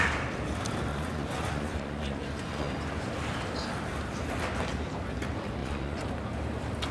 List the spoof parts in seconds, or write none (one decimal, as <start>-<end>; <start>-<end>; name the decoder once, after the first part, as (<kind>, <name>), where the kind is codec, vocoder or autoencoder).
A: 0.9-2.7 (vocoder, Vocos); 5.6-6.1